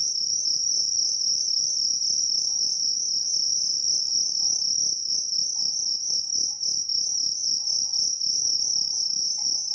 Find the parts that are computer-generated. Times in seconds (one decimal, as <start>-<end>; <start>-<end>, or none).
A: none